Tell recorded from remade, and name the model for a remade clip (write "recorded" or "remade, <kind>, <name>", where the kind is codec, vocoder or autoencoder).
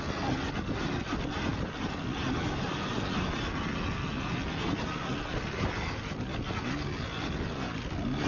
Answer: recorded